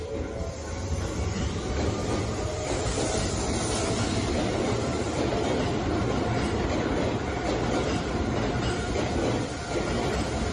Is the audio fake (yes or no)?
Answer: no